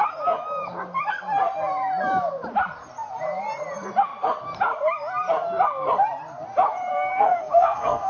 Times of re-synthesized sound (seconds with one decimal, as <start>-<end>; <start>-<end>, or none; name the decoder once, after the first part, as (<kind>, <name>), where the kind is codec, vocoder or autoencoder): 7.1-8.1 (codec, SNAC)